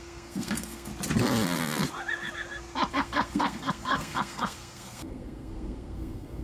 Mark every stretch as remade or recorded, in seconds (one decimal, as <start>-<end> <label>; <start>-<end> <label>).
0.0-0.9 remade; 0.9-2.9 recorded; 2.9-6.4 remade

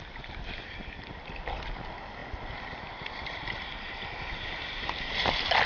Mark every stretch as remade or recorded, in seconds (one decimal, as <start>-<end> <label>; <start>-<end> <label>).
0.0-5.7 recorded

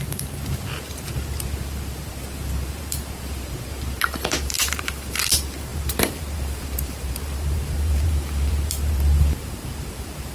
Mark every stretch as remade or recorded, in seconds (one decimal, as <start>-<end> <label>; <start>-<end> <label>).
0.0-10.3 remade